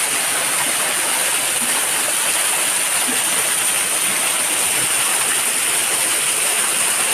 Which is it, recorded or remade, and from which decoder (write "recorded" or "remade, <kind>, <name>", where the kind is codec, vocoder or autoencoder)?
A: recorded